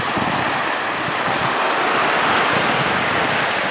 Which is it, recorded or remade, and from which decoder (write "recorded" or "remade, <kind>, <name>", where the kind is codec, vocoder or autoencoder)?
recorded